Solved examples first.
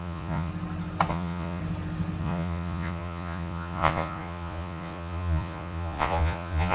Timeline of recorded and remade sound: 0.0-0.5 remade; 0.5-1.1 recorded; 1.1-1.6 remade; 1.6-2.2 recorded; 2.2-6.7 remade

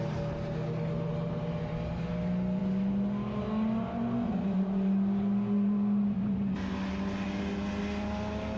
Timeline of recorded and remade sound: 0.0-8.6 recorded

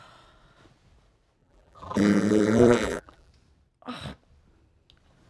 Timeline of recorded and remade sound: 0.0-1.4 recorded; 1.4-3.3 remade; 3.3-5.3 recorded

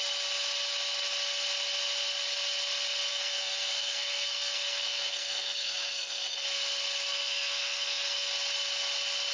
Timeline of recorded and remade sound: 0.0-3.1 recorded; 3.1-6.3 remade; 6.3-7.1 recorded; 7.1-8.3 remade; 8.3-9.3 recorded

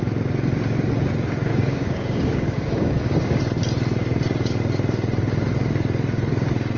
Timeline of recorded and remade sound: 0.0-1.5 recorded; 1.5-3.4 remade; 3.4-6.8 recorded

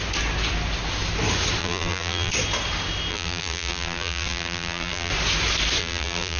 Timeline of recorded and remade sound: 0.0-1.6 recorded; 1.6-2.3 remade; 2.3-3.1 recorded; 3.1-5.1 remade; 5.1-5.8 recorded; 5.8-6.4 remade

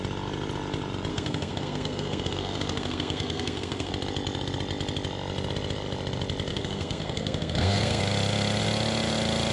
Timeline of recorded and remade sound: 0.0-1.1 recorded; 1.1-3.9 remade; 3.9-6.5 recorded; 6.5-8.0 remade; 8.0-9.5 recorded